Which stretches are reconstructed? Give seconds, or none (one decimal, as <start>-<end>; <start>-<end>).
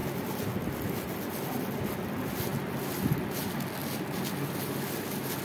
none